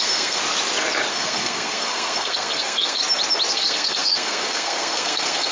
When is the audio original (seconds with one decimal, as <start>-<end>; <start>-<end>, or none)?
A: 0.4-1.1; 3.0-3.5